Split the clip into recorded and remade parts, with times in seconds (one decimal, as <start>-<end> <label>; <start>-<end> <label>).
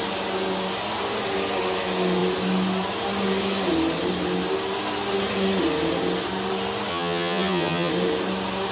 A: 0.0-6.9 recorded; 6.9-7.9 remade; 7.9-8.7 recorded